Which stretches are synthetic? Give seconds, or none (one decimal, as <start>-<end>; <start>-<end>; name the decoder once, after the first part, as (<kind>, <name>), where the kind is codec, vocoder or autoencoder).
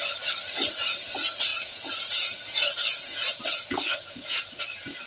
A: 1.5-4.6 (vocoder, Vocos)